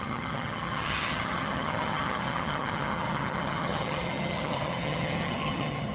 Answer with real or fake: fake